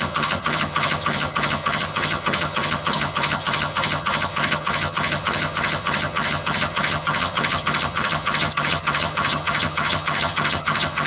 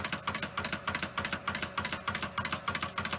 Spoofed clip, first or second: first